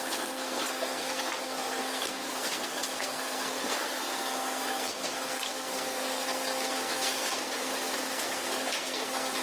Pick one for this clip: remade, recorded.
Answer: remade